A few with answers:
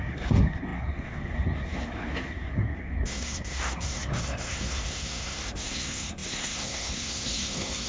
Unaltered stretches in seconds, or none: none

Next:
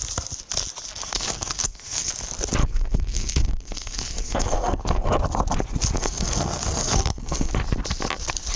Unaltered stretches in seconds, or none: 0.0-1.0; 2.1-2.6; 5.1-6.0; 7.5-8.6

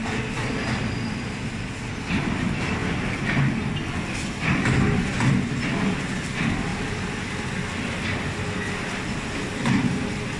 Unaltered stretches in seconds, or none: 0.0-10.4

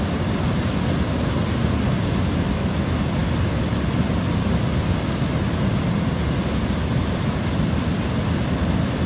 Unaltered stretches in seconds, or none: 0.0-9.1

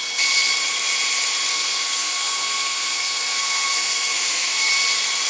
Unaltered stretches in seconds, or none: 0.0-1.5; 4.7-5.3

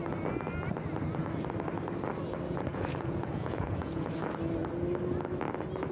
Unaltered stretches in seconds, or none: 0.0-2.7; 4.1-5.9

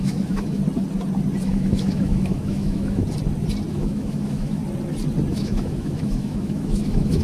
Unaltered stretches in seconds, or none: 0.6-1.4; 3.0-3.7; 4.6-5.3